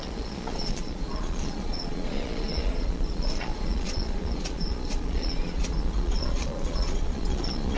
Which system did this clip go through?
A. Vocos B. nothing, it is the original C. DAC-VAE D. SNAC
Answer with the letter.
A